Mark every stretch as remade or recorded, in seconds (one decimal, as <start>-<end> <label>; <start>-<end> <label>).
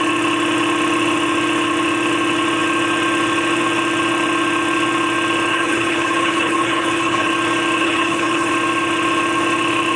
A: 0.0-5.5 recorded; 5.5-7.3 remade; 7.3-7.8 recorded; 7.8-8.5 remade; 8.5-10.0 recorded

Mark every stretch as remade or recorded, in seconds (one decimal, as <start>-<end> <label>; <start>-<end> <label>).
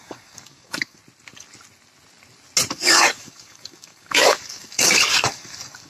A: 0.0-1.0 remade; 1.0-2.7 recorded; 2.7-5.9 remade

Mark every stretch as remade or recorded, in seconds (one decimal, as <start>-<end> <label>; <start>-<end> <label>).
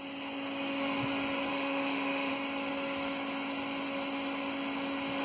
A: 0.0-1.5 recorded; 1.5-2.3 remade; 2.3-5.2 recorded